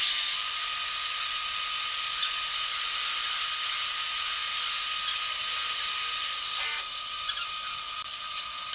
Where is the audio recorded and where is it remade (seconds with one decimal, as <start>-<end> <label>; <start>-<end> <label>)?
0.0-8.7 recorded